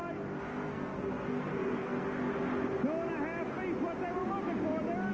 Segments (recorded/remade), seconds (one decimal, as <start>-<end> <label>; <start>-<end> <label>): 0.0-0.5 recorded; 0.5-2.2 remade; 2.2-5.1 recorded